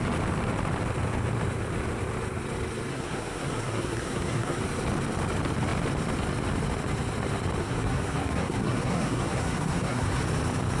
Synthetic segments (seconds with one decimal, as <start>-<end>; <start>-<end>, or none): 2.9-4.6; 7.6-10.2